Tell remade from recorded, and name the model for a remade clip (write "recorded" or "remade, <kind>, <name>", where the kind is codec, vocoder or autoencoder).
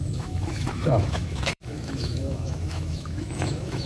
remade, autoencoder, DAC-VAE